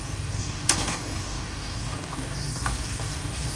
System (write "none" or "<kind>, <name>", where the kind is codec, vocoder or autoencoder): codec, DAC